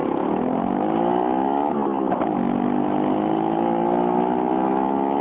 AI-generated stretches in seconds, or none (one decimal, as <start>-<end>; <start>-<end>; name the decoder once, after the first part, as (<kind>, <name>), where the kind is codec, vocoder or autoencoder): none

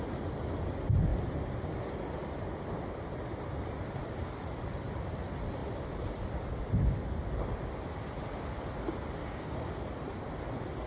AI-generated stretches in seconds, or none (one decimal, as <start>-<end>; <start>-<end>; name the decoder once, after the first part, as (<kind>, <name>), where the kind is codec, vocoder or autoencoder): 9.2-9.7 (codec, DAC)